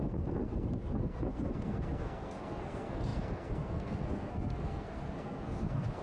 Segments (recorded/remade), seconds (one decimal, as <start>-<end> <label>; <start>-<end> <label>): 0.0-6.0 remade